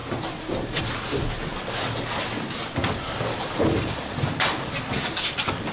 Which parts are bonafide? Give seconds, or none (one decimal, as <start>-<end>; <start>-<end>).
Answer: 0.0-5.7